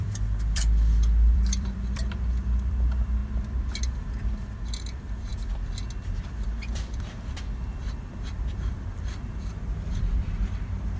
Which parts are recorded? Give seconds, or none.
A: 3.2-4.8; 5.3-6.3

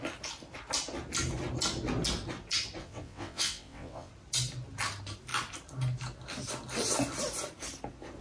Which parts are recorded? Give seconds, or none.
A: 0.0-2.8; 4.1-8.2

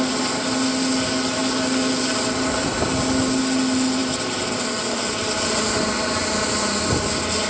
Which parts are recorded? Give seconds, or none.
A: 0.0-7.5

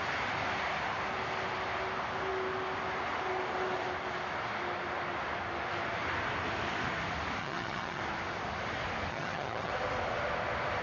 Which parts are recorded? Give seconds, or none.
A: 0.0-7.4; 8.0-9.1; 9.7-10.8